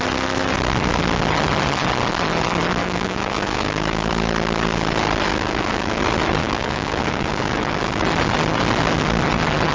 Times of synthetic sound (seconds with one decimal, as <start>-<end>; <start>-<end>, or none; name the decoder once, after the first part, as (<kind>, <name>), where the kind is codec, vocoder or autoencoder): 2.8-4.1 (autoencoder, DAC-VAE); 5.3-6.0; 6.4-8.0